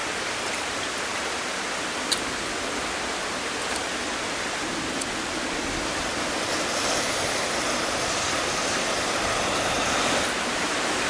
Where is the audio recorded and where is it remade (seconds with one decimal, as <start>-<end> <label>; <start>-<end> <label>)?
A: 0.0-0.5 remade; 0.5-1.1 recorded; 1.1-3.9 remade; 3.9-11.1 recorded